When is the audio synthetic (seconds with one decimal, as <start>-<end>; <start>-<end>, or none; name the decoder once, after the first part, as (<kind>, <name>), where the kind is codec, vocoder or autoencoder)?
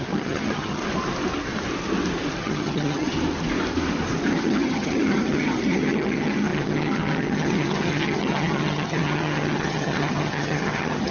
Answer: 0.0-0.8 (vocoder, HiFi-GAN); 2.4-3.1; 4.3-11.1